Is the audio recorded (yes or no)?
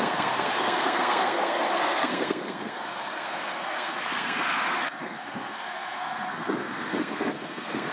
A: no